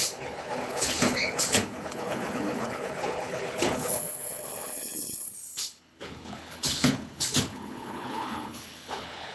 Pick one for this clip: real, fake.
fake